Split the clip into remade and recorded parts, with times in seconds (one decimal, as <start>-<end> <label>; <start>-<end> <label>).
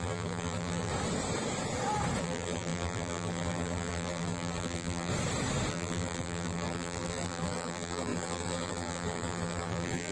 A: 0.0-0.9 remade; 0.9-2.2 recorded; 2.2-5.1 remade; 5.1-5.7 recorded; 5.7-10.1 remade